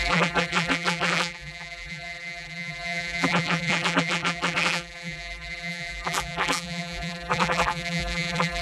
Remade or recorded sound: remade